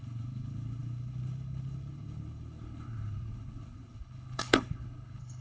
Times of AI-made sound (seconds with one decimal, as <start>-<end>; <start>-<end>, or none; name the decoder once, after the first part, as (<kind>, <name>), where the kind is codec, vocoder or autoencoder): 0.0-5.4 (codec, HILCodec)